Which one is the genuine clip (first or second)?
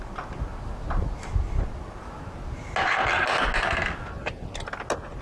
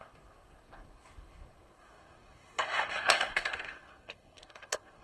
first